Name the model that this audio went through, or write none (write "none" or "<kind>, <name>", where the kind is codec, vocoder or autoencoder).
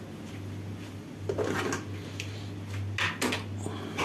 none